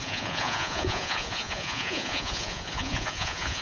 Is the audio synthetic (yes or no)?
yes